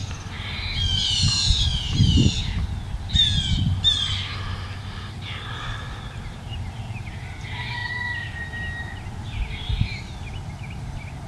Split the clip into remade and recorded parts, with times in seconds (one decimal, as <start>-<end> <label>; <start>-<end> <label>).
0.0-11.3 recorded